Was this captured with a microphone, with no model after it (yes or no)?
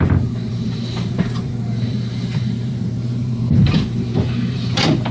no